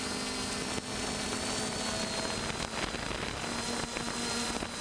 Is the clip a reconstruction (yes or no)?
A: no